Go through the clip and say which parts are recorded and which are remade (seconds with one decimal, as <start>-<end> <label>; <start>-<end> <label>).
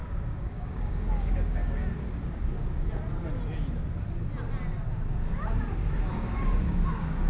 0.0-1.6 remade; 1.6-6.0 recorded; 6.0-7.3 remade